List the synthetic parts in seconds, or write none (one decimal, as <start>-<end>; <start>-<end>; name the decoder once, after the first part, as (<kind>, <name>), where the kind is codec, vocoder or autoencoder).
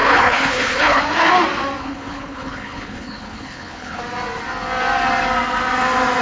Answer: 0.0-1.0 (codec, HILCodec); 1.8-4.0